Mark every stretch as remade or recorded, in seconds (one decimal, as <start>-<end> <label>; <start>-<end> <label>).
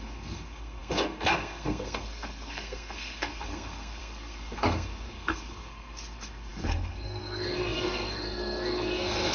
0.0-9.3 remade